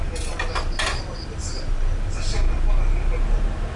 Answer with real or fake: real